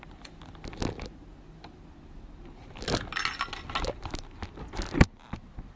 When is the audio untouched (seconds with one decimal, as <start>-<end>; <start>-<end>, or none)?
0.0-5.8